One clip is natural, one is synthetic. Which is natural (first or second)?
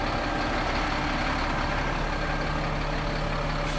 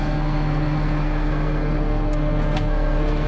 first